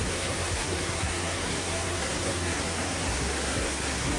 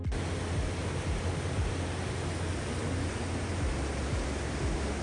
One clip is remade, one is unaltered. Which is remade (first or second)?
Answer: first